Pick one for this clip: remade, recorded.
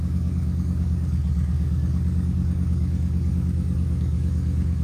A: remade